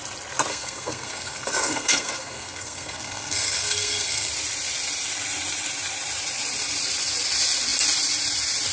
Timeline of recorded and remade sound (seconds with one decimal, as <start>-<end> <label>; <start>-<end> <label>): 0.0-0.5 recorded; 0.5-4.3 remade; 4.3-8.7 recorded